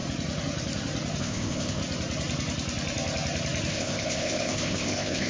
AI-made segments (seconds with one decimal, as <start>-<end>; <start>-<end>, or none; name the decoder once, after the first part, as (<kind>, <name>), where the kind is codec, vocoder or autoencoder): 1.2-1.8 (codec, ZipCodec); 3.7-5.3